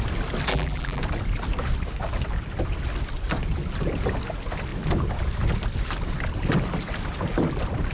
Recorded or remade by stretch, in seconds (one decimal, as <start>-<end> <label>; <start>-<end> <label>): 0.0-0.5 recorded; 0.5-1.0 remade; 1.0-7.9 recorded